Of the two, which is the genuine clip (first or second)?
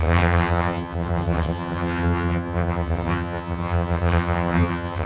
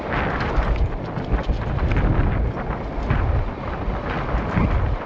second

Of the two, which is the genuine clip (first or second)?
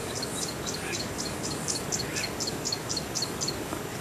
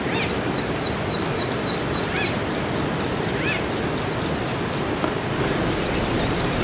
second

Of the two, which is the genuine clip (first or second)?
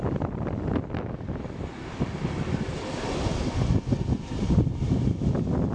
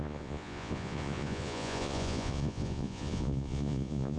first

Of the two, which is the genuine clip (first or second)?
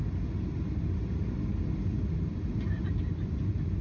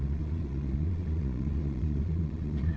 first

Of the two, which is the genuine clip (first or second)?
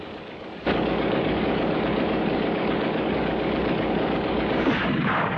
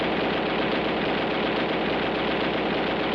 second